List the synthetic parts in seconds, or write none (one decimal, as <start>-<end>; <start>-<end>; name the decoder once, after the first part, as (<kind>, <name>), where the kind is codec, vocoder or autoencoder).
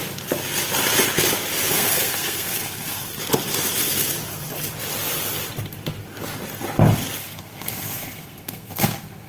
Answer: 1.7-3.1 (codec, SNAC); 7.2-9.3